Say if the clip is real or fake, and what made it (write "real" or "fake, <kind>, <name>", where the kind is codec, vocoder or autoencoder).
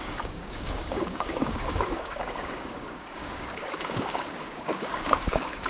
fake, codec, DAC